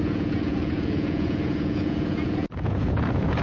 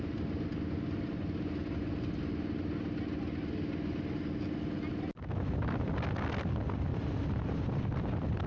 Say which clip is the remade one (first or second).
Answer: first